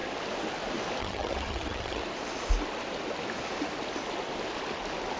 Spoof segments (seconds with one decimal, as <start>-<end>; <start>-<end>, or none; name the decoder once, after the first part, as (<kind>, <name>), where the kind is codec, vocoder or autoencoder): 1.0-2.0 (vocoder, HiFi-GAN)